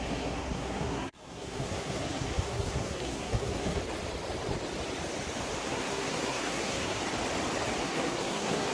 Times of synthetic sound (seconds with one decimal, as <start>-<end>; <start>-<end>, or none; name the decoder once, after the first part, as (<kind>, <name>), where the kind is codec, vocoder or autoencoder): 0.0-3.8 (codec, SNAC); 5.6-7.0; 7.8-8.7